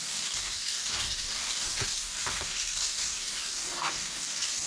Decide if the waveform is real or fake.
fake